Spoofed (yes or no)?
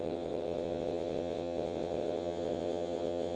yes